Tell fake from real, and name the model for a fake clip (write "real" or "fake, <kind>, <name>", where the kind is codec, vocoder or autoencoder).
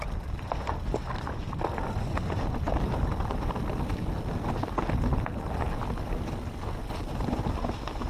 real